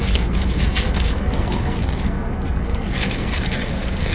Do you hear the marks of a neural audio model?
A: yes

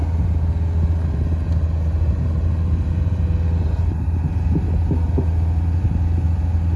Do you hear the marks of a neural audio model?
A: no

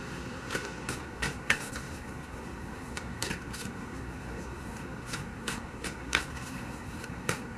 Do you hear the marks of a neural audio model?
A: yes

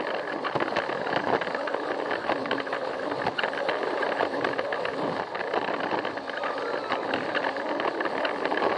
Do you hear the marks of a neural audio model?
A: no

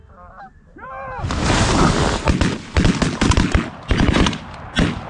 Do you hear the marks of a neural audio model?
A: no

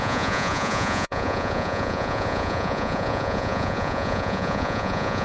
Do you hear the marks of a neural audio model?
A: yes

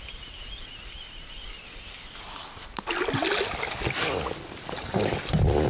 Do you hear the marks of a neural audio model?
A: no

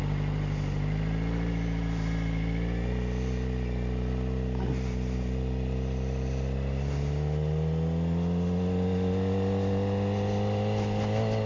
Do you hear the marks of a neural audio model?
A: no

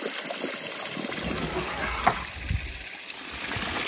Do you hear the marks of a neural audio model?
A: no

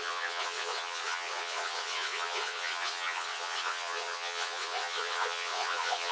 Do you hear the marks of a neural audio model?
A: yes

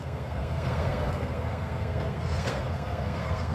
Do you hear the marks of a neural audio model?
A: yes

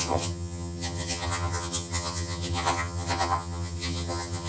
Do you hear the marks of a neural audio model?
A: yes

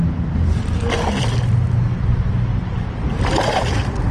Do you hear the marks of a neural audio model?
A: no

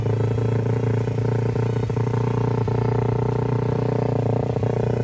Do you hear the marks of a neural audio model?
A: no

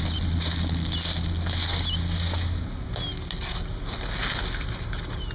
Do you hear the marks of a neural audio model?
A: no